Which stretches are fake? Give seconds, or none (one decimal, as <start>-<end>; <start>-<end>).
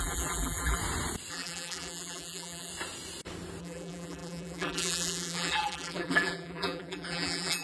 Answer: 0.0-0.8; 1.3-2.7; 3.6-7.6